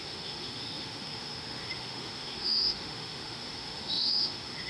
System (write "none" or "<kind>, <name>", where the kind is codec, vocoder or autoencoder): autoencoder, DAC-VAE